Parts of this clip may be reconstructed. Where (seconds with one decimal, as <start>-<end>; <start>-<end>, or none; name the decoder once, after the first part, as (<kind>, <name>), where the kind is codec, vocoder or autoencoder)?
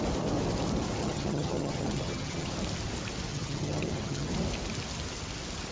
1.0-2.5 (vocoder, HiFi-GAN); 3.3-4.3